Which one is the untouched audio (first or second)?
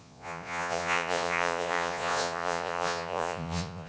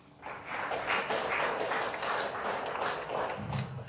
second